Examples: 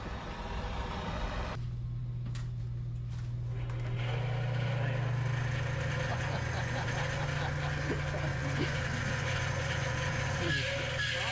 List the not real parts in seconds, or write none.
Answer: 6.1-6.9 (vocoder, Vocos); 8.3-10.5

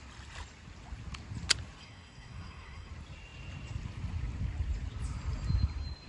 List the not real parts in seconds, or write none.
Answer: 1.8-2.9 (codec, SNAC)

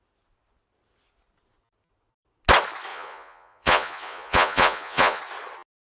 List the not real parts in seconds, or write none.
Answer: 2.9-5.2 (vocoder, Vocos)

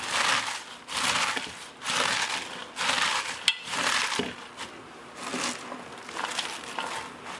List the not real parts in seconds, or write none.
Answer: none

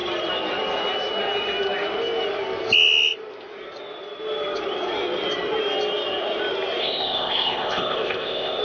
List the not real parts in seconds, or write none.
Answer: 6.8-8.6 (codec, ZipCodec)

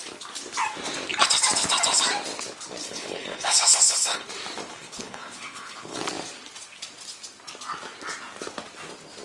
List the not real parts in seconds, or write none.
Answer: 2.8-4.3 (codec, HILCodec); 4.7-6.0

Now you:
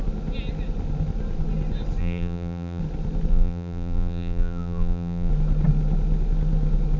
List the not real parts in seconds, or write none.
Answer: 2.0-2.8 (vocoder, BigVGAN v2); 3.3-5.3

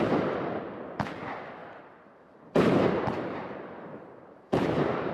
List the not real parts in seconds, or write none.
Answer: 1.6-5.1 (vocoder, BigVGAN v2)